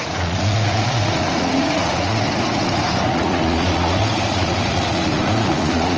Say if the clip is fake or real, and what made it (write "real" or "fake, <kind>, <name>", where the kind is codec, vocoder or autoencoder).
fake, vocoder, Vocos